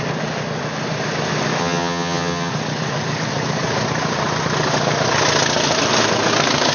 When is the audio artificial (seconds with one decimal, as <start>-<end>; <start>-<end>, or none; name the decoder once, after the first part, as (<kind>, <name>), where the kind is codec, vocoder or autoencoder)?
1.6-2.5 (vocoder, HiFi-GAN)